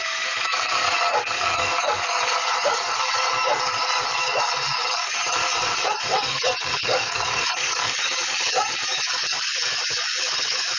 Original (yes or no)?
no